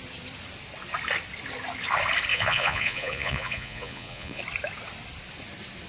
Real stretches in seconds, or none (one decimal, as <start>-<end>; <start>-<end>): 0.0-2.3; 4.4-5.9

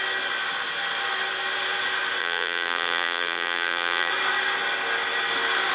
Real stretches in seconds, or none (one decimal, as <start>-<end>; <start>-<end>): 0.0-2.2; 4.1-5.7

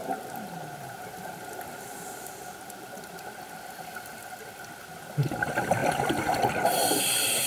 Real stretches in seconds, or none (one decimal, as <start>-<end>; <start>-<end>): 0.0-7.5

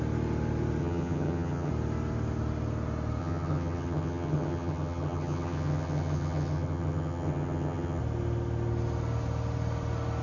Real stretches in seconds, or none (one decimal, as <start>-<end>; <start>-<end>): 0.0-0.8; 1.7-3.2; 8.0-10.2

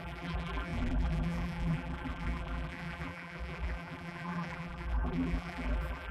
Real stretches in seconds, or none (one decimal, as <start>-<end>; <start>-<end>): none